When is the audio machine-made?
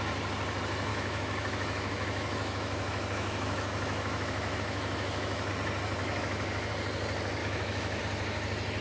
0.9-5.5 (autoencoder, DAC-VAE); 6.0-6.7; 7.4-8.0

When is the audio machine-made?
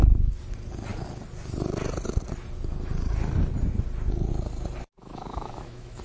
5.0-6.0 (autoencoder, DAC-VAE)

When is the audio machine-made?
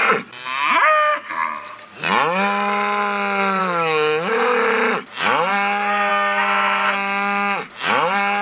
3.6-4.4 (autoencoder, DAC-VAE)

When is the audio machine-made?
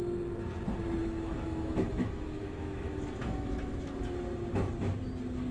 1.0-3.9 (autoencoder, DAC-VAE)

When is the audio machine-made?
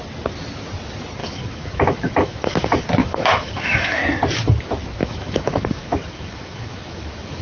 1.2-2.5 (autoencoder, DAC-VAE); 3.0-4.0; 5.0-7.4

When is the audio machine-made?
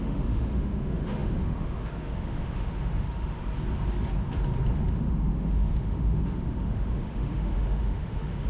0.0-3.4 (autoencoder, DAC-VAE); 4.7-8.5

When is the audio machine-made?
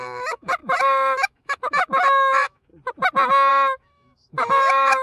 0.0-2.7 (autoencoder, DAC-VAE); 3.5-5.0